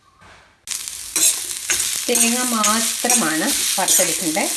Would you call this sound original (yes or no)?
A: yes